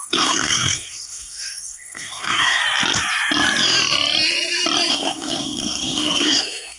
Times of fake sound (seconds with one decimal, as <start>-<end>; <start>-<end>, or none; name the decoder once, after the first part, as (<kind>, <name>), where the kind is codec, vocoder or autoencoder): 0.0-2.6 (codec, SNAC); 4.9-6.8